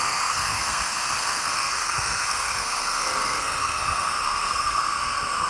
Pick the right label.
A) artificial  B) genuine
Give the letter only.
A